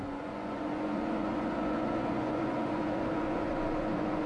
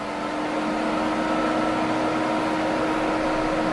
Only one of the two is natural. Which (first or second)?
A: second